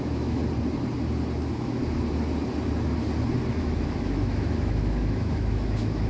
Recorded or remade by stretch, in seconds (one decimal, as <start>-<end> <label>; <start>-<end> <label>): 0.0-0.4 remade; 0.4-1.4 recorded; 1.4-1.8 remade; 1.8-3.5 recorded; 3.5-6.1 remade